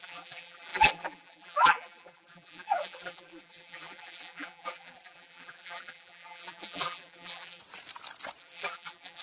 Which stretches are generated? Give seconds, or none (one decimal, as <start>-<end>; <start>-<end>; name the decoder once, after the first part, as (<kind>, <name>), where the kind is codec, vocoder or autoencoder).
0.0-7.6 (vocoder, BigVGAN v2); 8.4-9.2